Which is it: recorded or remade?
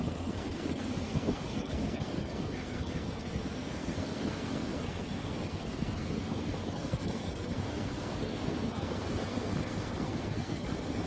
remade